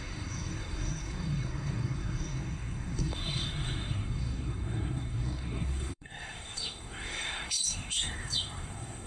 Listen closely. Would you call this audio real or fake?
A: fake